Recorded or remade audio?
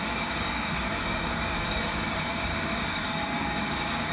remade